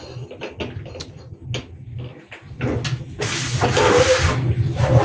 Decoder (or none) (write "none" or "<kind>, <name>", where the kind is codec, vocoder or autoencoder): none